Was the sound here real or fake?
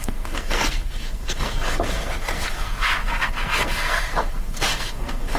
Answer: fake